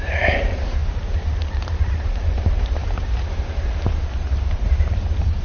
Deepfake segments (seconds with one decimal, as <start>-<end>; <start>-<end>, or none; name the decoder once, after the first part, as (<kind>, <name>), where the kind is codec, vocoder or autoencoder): 0.0-0.8 (vocoder, BigVGAN v2); 1.9-5.4